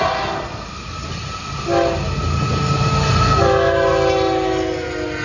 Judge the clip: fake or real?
real